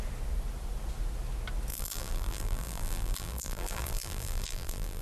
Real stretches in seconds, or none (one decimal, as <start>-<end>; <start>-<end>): 0.0-1.7